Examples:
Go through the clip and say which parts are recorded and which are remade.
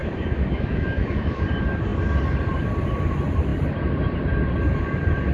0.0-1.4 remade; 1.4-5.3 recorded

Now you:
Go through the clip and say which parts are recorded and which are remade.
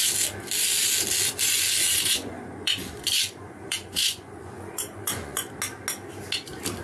0.0-1.8 recorded; 1.8-5.5 remade; 5.5-6.8 recorded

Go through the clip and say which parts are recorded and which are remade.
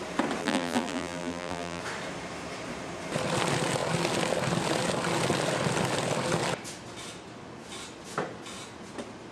0.0-0.4 recorded; 0.4-1.8 remade; 1.8-9.3 recorded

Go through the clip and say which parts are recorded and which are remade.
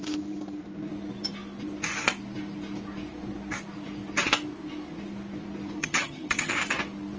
0.0-5.8 recorded; 5.8-6.5 remade; 6.5-7.2 recorded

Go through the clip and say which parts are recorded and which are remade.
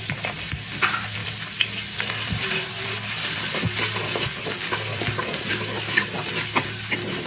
0.0-7.3 recorded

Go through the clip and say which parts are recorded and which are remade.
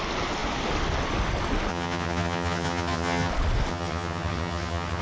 0.0-1.7 recorded; 1.7-3.3 remade; 3.3-3.7 recorded; 3.7-5.0 remade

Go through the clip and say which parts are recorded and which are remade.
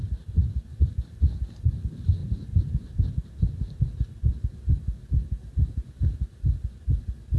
0.0-2.2 recorded; 2.2-3.8 remade; 3.8-5.4 recorded; 5.4-6.4 remade; 6.4-7.4 recorded